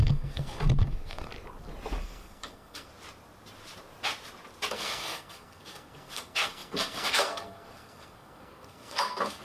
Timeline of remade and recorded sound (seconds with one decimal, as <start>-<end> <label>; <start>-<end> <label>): 0.0-1.3 remade; 1.3-2.0 recorded; 2.0-2.9 remade; 2.9-4.7 recorded; 4.7-9.4 remade